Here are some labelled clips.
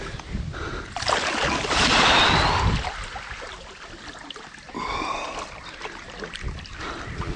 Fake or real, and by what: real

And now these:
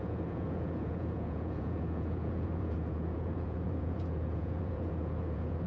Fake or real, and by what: fake, vocoder, Vocos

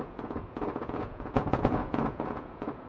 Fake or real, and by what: fake, vocoder, Vocos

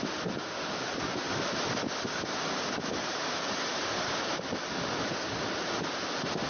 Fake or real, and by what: real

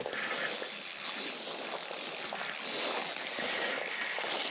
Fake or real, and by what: real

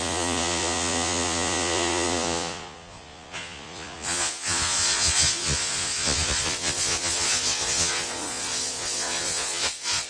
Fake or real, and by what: fake, vocoder, Vocos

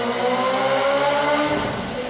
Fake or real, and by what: real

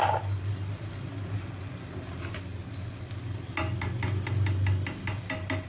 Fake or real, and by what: real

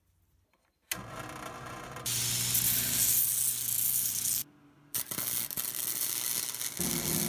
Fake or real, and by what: real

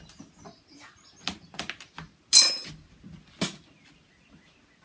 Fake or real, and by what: real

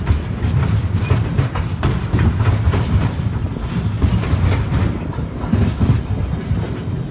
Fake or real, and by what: real